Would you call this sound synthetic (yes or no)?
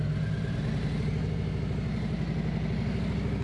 no